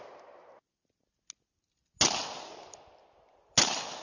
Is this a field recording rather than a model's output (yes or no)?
yes